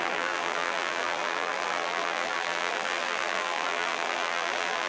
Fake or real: fake